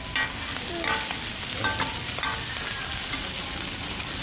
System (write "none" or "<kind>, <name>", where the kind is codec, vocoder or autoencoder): none